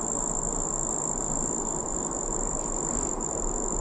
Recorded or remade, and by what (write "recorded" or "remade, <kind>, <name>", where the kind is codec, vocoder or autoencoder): recorded